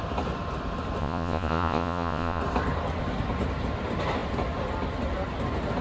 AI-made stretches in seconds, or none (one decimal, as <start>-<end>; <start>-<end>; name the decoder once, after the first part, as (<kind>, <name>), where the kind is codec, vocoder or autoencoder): 1.0-2.4 (vocoder, Vocos)